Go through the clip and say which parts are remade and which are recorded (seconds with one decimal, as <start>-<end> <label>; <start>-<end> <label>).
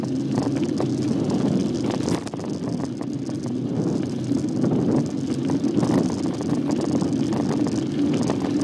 0.0-8.6 recorded